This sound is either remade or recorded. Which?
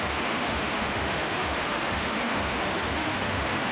remade